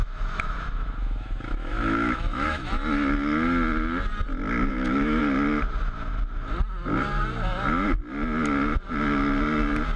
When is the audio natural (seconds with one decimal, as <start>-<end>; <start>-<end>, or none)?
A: 2.7-4.7; 5.2-10.0